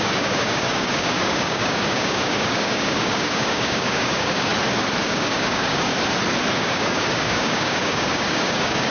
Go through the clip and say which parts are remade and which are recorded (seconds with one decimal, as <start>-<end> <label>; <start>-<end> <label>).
0.0-4.5 remade; 4.5-5.0 recorded; 5.0-5.9 remade; 5.9-6.5 recorded; 6.5-8.9 remade